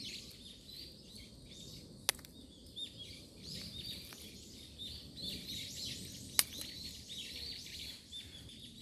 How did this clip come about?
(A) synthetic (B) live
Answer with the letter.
B